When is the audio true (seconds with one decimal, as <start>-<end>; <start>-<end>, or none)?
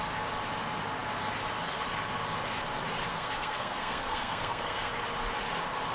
0.0-3.1; 4.9-5.9